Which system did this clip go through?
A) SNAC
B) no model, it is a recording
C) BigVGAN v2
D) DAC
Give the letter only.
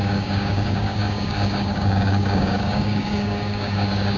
D